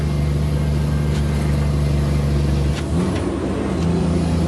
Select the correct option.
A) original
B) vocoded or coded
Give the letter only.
A